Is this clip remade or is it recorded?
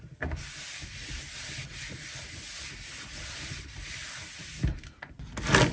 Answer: recorded